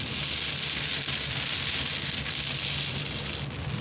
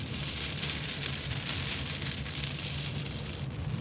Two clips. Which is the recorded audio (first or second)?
first